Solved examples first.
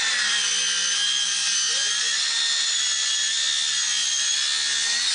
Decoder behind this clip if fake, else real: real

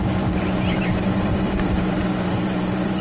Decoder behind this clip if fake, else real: fake, vocoder, BigVGAN v2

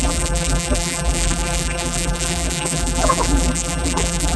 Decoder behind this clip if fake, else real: fake, vocoder, BigVGAN v2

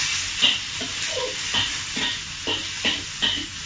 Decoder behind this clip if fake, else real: real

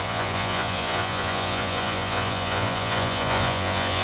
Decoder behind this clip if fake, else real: fake, vocoder, Vocos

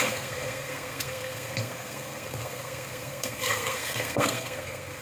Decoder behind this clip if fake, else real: fake, codec, SNAC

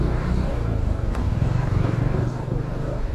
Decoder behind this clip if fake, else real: fake, codec, DAC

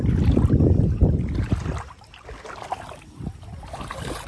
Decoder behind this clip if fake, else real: real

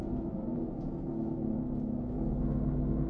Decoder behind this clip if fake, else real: real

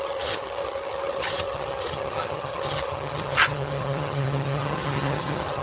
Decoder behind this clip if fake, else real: fake, vocoder, HiFi-GAN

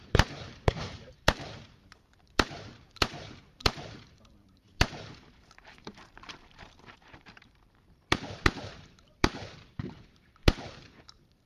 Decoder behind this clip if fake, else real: fake, vocoder, BigVGAN v2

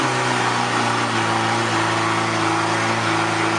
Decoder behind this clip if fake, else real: real